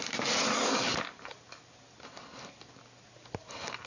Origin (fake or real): real